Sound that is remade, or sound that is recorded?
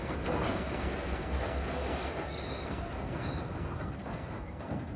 remade